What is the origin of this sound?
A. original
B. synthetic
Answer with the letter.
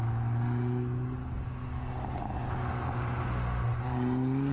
A